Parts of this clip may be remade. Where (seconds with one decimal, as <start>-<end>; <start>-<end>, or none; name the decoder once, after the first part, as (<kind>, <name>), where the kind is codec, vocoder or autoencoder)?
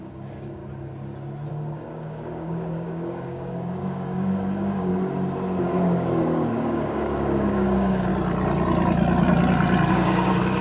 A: 0.0-0.6 (codec, DAC); 1.5-4.9; 5.6-8.1; 9.9-10.6